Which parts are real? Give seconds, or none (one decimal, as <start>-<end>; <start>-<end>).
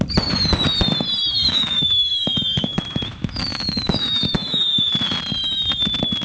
0.0-1.2; 4.9-6.2